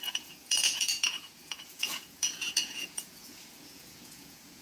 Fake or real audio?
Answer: fake